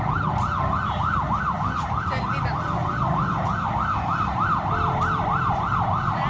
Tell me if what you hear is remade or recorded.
recorded